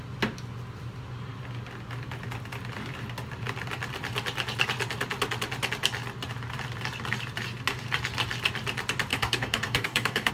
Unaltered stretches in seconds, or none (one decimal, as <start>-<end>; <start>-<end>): 0.0-9.1